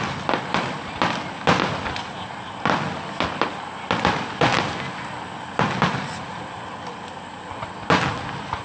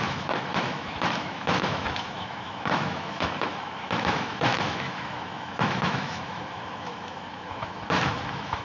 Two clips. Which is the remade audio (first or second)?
second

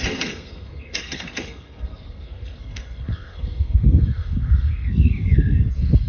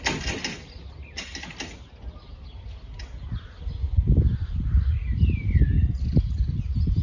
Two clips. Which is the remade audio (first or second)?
first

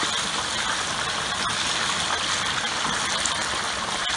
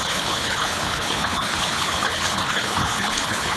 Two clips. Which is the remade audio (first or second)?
second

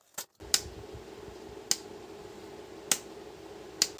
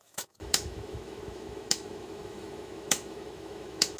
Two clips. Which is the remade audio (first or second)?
second